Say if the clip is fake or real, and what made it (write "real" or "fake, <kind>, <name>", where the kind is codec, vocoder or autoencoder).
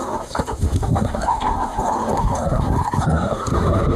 fake, codec, SNAC